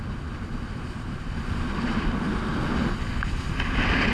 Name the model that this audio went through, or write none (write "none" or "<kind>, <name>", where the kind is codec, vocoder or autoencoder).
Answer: none